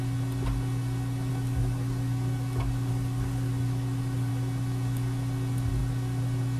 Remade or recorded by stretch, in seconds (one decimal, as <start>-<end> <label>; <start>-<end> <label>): 0.0-1.3 recorded; 1.3-4.3 remade; 4.3-6.6 recorded